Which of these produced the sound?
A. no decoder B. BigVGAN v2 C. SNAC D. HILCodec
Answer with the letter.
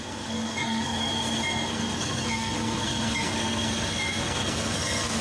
C